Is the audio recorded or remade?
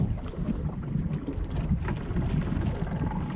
recorded